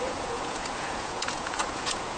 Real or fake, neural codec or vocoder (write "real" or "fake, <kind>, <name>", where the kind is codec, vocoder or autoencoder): fake, vocoder, Vocos